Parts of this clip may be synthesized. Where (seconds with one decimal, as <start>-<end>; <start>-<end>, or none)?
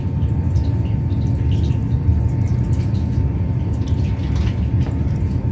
none